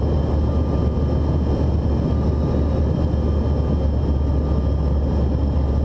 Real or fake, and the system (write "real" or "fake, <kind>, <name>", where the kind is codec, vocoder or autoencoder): real